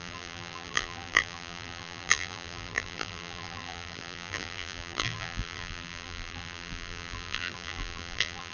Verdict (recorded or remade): remade